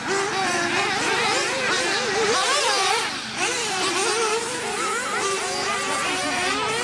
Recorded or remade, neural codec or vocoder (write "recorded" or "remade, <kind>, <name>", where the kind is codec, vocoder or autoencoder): recorded